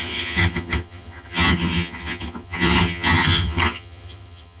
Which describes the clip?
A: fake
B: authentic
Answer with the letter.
A